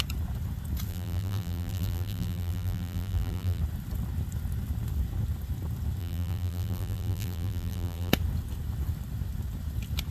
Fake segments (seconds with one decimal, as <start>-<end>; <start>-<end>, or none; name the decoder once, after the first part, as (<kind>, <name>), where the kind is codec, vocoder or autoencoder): 0.9-3.6 (vocoder, BigVGAN v2); 6.0-8.1